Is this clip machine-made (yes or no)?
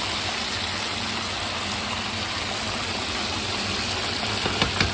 no